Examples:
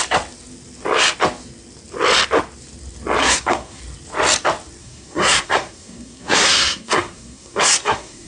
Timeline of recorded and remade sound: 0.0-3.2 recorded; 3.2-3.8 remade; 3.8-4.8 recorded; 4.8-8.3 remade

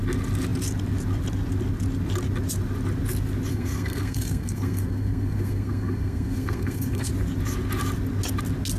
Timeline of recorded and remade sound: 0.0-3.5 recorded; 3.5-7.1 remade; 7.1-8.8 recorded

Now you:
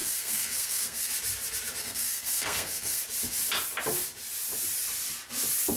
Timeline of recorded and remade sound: 0.0-1.1 remade; 1.1-1.8 recorded; 1.8-3.0 remade; 3.0-5.8 recorded

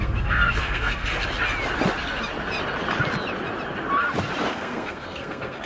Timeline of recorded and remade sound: 0.0-1.1 remade; 1.1-4.5 recorded; 4.5-5.7 remade

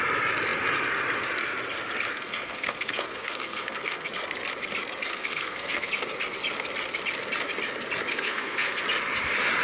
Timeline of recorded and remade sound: 0.0-2.1 recorded; 2.1-4.1 remade; 4.1-5.1 recorded; 5.1-5.9 remade; 5.9-8.1 recorded; 8.1-8.8 remade; 8.8-9.6 recorded